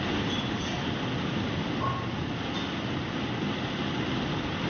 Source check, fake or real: real